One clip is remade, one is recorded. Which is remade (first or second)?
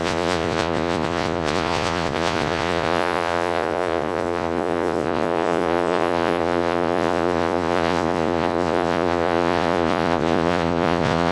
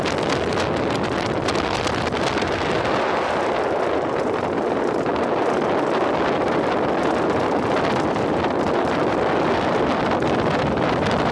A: first